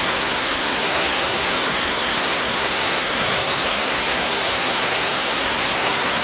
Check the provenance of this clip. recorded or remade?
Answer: remade